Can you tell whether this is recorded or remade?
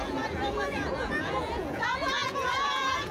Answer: remade